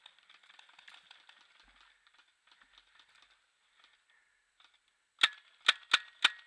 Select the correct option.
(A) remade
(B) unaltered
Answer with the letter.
B